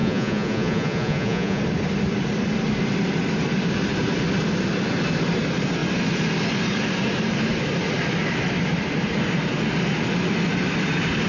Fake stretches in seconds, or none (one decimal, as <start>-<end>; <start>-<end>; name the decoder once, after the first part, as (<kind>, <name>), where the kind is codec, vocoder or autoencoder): 0.0-1.6 (vocoder, Vocos)